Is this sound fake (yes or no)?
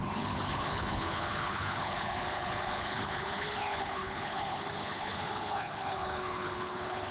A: yes